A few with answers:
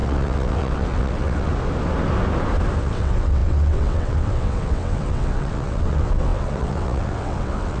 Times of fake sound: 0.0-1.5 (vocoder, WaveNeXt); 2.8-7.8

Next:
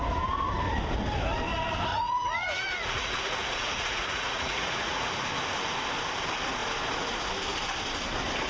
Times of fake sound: 1.9-5.1 (vocoder, Vocos)

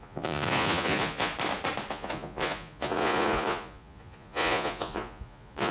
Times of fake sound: 0.0-1.3 (vocoder, Vocos); 1.9-5.7

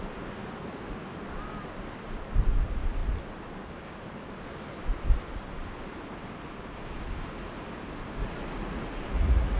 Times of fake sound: 8.2-9.6 (vocoder, Vocos)

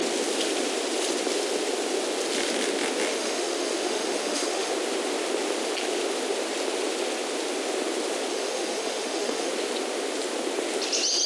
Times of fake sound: 3.1-4.7 (autoencoder, DAC-VAE); 8.3-9.5

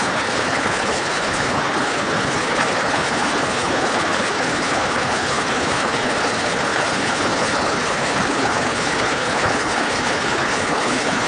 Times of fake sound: 0.0-11.3 (codec, HILCodec)

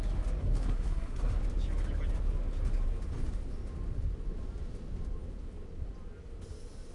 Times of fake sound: 0.4-1.4 (codec, SNAC)

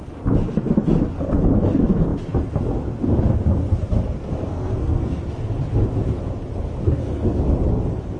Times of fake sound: 4.2-5.2 (codec, SNAC); 6.8-7.4